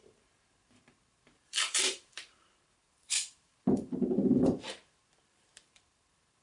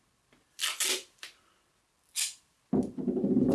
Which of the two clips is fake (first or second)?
first